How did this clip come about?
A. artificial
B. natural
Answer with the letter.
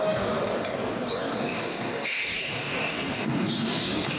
A